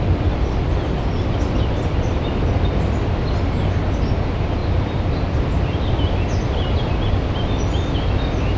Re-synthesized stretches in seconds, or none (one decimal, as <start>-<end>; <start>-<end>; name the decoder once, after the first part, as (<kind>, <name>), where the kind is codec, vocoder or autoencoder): none